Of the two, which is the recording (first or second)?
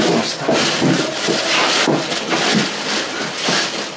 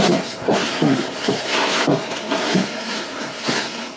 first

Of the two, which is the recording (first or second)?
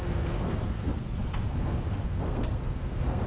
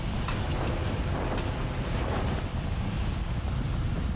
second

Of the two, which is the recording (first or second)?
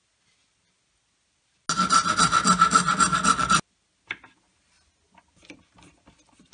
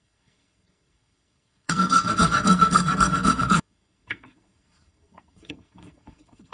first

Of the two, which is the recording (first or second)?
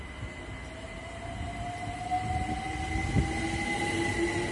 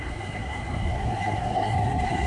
first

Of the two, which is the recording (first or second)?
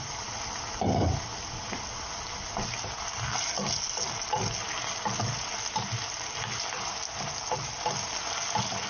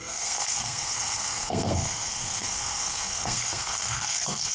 first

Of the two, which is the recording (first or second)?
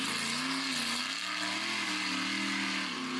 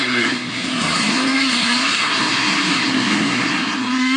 first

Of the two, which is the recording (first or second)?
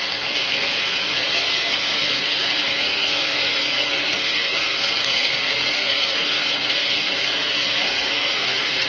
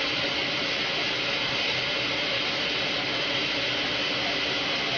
second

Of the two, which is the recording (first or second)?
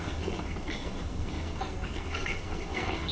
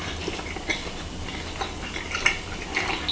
second